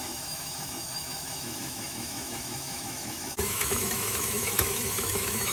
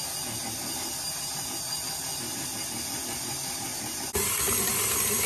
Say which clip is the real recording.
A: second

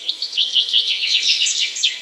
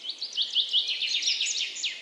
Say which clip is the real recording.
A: second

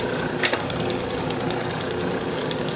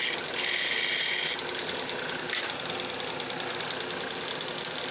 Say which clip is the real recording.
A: second